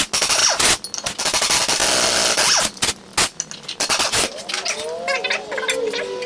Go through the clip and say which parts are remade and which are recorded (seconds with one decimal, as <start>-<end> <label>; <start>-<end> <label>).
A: 0.0-6.3 recorded